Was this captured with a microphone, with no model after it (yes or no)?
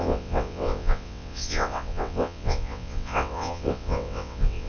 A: no